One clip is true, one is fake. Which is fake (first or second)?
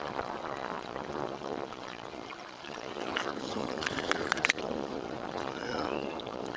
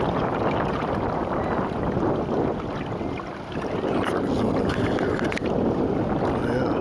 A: first